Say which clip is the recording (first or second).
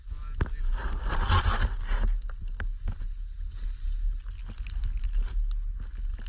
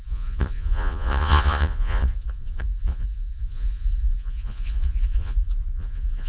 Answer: first